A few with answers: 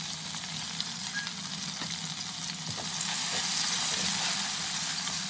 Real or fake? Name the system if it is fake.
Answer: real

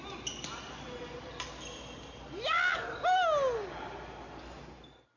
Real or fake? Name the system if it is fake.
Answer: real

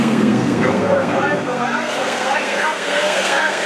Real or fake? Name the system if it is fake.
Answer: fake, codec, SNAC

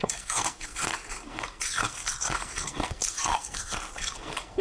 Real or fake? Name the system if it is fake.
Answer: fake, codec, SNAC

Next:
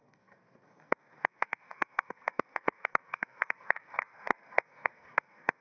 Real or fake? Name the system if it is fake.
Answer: fake, codec, SNAC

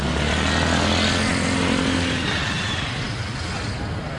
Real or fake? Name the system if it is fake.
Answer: real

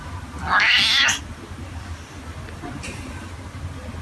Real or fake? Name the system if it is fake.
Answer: real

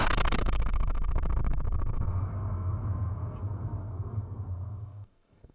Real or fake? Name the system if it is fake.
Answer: fake, codec, SNAC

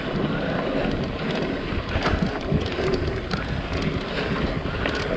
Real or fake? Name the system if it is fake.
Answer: real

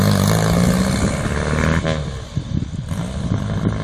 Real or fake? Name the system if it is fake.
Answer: real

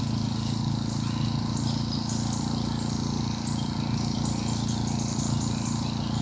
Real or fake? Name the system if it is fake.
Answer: real